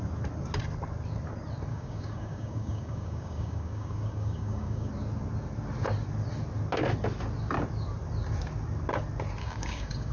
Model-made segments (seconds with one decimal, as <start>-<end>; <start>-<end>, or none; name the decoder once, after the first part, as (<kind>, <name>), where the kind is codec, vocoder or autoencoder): 1.7-4.9 (codec, DAC); 9.4-10.1